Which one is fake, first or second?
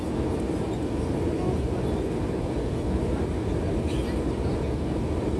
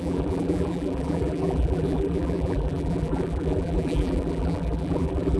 second